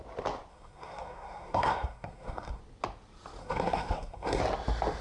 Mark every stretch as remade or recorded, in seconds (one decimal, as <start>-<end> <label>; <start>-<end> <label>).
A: 0.0-0.5 recorded; 0.5-2.6 remade; 2.6-3.4 recorded; 3.4-4.4 remade; 4.4-5.0 recorded